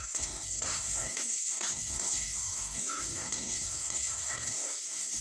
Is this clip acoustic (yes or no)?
no